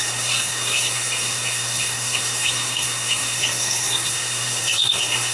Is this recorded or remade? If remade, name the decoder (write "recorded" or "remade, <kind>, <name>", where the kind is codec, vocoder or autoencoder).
remade, codec, SNAC